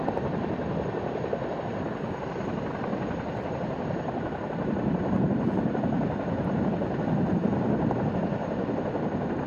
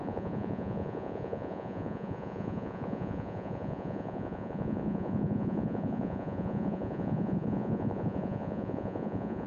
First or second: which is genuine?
first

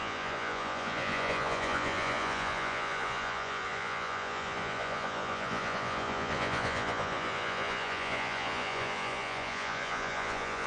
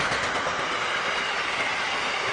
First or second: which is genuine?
second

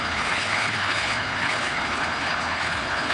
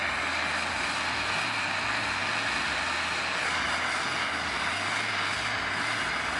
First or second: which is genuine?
second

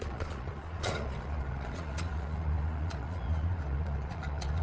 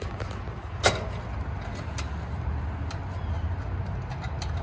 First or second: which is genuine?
second